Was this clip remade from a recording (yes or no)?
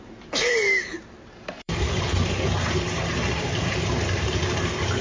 yes